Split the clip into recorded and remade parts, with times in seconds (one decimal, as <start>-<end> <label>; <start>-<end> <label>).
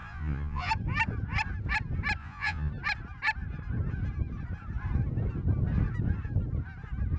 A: 0.0-0.7 remade; 0.7-2.2 recorded; 2.2-2.7 remade; 2.7-7.2 recorded